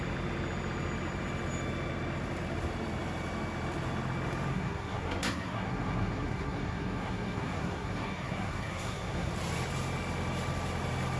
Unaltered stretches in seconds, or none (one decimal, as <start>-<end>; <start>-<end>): 0.0-4.5; 9.3-11.2